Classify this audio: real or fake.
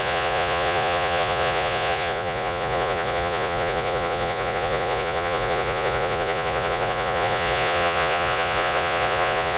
fake